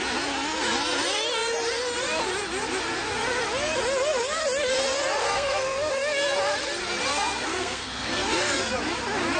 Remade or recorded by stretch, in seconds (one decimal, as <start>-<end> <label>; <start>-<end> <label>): 0.0-5.2 recorded; 5.2-5.9 remade; 5.9-7.1 recorded; 7.1-8.7 remade; 8.7-9.4 recorded